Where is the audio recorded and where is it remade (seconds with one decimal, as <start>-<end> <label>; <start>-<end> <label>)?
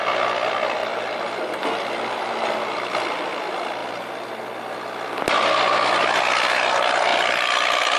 0.0-0.8 recorded; 0.8-3.4 remade; 3.4-7.1 recorded; 7.1-8.0 remade